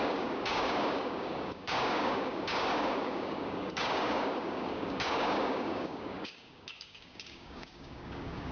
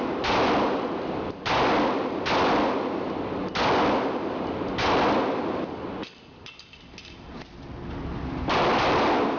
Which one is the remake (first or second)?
first